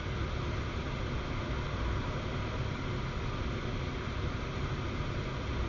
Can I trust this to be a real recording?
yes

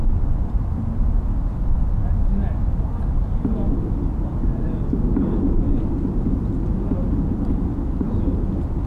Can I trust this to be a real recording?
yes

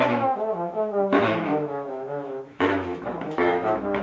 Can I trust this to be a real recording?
no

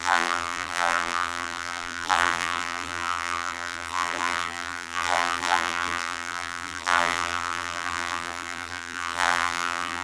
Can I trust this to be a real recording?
no